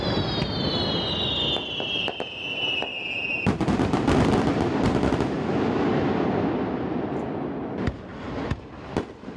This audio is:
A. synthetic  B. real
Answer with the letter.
B